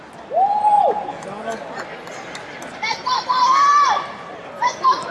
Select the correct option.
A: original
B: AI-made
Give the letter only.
B